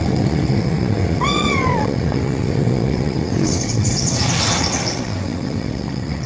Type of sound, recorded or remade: remade